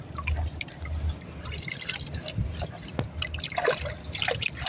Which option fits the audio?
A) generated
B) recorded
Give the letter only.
B